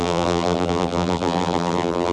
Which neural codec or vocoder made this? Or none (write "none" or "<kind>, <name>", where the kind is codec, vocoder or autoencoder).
vocoder, BigVGAN v2